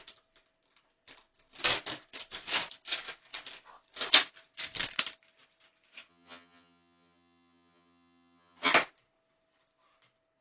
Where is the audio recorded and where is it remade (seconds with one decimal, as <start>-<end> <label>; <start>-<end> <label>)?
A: 0.0-6.1 recorded; 6.1-8.7 remade; 8.7-10.4 recorded